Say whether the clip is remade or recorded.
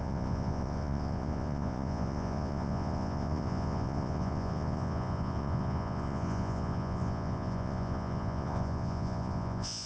remade